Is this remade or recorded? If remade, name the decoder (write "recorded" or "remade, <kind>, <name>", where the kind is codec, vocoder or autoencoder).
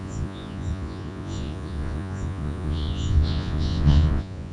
remade, vocoder, Vocos